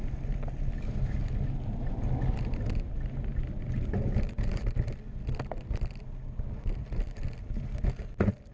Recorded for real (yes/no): yes